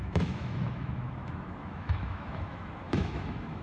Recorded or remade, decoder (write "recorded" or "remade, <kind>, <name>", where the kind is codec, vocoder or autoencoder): remade, autoencoder, DAC-VAE